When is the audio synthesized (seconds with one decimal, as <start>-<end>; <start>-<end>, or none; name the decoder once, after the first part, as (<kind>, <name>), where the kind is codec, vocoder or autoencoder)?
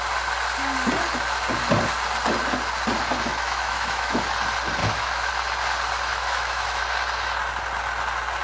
3.3-4.2 (autoencoder, DAC-VAE); 4.8-5.3; 6.1-6.8